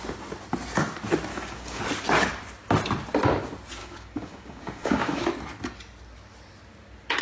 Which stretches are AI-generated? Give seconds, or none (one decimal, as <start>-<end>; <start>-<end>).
1.3-1.8; 3.8-5.2